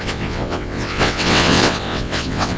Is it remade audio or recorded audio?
remade